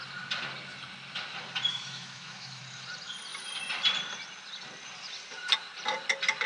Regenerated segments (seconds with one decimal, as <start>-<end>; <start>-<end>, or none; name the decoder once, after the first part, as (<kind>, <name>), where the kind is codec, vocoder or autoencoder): 1.7-2.6 (autoencoder, DAC-VAE)